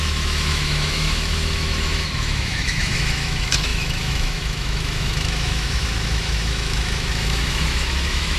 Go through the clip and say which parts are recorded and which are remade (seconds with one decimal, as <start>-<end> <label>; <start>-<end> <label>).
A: 0.0-8.4 remade

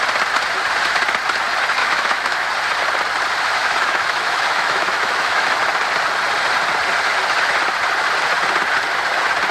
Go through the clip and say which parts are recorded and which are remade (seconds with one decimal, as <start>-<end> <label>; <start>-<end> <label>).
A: 0.0-1.8 recorded; 1.8-2.5 remade; 2.5-3.6 recorded; 3.6-5.6 remade; 5.6-9.5 recorded

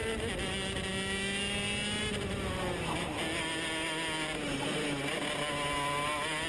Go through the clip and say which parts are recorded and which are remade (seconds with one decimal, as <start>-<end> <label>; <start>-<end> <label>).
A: 0.0-6.5 recorded

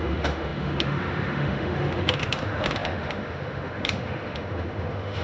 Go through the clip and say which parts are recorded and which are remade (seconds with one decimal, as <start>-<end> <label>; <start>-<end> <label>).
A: 0.0-5.2 remade

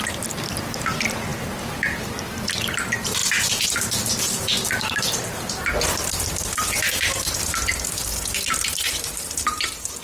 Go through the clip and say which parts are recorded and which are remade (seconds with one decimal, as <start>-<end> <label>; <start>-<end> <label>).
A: 0.0-10.0 recorded

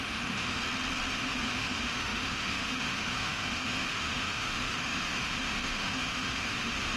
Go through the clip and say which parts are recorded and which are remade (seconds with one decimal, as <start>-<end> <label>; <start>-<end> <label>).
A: 0.0-0.6 remade; 0.6-1.1 recorded; 1.1-7.0 remade

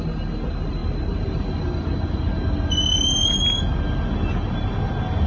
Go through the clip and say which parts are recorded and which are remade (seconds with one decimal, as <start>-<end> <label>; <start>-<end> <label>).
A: 0.0-5.3 recorded

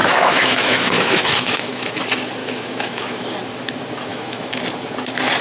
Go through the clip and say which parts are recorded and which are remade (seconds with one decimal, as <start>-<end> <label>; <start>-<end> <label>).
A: 0.0-2.0 remade; 2.0-2.4 recorded; 2.4-3.2 remade; 3.2-4.1 recorded; 4.1-4.6 remade; 4.6-5.4 recorded